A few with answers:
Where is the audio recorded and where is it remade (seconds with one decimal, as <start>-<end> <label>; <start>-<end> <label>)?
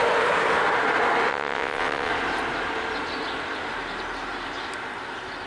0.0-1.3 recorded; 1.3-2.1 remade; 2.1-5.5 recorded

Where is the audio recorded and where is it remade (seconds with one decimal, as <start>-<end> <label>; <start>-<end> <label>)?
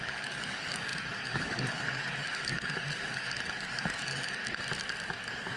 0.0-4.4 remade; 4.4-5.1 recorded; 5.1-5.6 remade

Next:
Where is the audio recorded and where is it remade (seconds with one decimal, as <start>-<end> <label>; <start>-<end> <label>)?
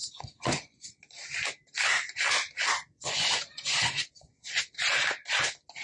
0.0-1.0 remade; 1.0-2.8 recorded; 2.8-4.6 remade; 4.6-5.8 recorded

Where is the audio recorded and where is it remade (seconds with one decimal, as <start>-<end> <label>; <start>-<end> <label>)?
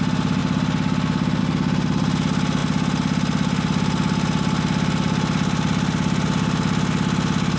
0.0-7.6 recorded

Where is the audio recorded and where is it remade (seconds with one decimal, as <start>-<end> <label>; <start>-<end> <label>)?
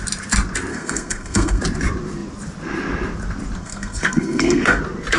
0.0-0.7 recorded; 0.7-1.6 remade; 1.6-3.6 recorded; 3.6-4.8 remade; 4.8-5.2 recorded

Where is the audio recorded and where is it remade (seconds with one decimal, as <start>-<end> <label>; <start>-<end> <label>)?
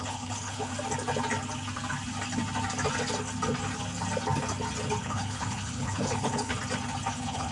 0.0-0.7 remade; 0.7-5.0 recorded; 5.0-6.5 remade; 6.5-7.1 recorded; 7.1-7.5 remade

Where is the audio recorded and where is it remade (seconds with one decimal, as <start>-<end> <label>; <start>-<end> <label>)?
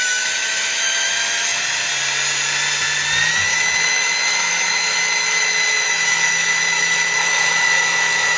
0.0-1.9 remade; 1.9-3.3 recorded; 3.3-8.4 remade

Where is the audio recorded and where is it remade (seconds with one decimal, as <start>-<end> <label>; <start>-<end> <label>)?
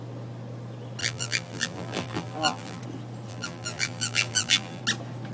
0.0-1.0 recorded; 1.0-2.8 remade; 2.8-3.3 recorded; 3.3-4.8 remade; 4.8-5.3 recorded